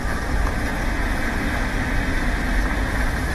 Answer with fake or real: real